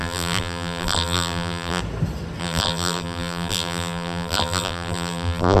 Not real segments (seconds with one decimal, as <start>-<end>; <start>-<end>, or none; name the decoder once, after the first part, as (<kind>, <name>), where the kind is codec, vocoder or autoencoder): 0.0-1.8 (vocoder, BigVGAN v2); 2.4-5.6